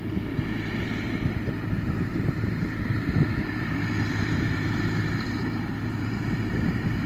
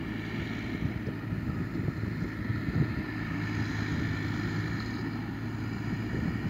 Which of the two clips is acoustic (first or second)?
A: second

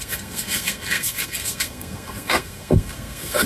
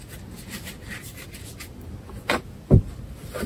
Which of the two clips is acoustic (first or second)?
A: second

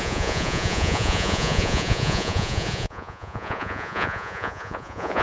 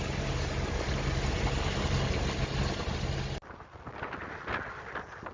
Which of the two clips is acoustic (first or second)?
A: second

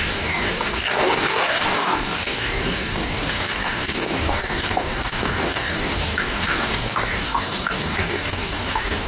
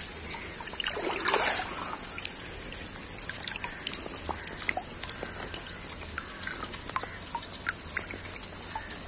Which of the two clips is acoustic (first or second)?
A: second